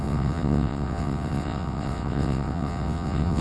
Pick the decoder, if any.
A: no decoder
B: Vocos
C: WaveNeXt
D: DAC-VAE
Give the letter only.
C